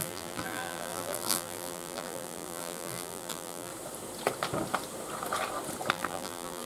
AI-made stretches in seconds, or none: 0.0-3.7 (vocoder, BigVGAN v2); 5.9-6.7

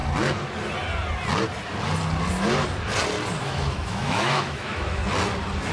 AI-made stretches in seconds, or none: 3.4-5.0 (autoencoder, DAC-VAE)

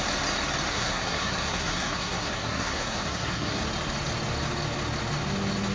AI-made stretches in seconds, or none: 0.7-3.6 (codec, SNAC)

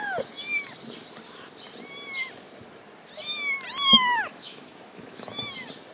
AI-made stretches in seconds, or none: 4.3-5.4 (autoencoder, DAC-VAE)

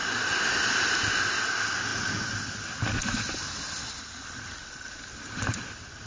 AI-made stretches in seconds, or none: none

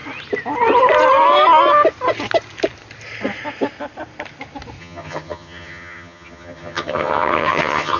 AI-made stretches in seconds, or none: 4.8-8.0 (vocoder, HiFi-GAN)

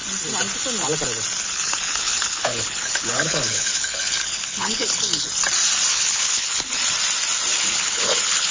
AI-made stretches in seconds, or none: 1.4-5.3 (codec, HILCodec); 5.9-6.8; 7.6-8.5

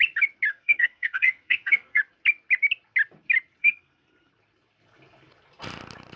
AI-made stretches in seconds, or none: 0.5-2.0 (codec, SNAC); 3.6-4.3